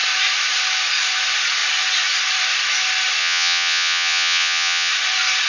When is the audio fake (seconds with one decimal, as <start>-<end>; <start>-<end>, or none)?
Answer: 3.2-4.9